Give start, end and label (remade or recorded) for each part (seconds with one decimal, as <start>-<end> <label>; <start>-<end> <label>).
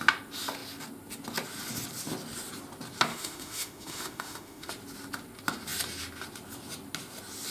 0.0-3.1 recorded; 3.1-4.7 remade; 4.7-7.5 recorded